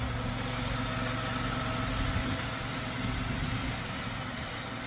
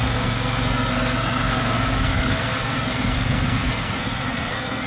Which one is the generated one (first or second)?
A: second